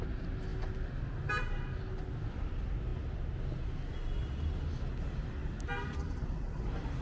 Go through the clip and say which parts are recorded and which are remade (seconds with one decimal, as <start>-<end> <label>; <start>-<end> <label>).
0.0-7.0 recorded